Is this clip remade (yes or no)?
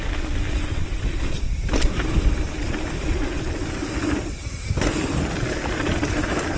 no